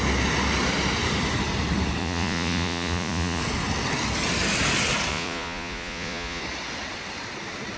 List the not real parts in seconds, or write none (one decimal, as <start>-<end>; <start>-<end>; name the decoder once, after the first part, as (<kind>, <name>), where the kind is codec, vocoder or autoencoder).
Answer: 2.0-3.4 (vocoder, Vocos); 5.1-6.4